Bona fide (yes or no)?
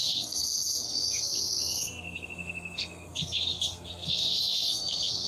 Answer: no